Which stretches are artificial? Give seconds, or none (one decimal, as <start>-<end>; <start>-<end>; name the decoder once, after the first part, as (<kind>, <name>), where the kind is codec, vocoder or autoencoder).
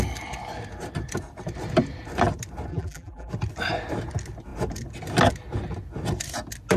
2.7-3.3 (vocoder, BigVGAN v2)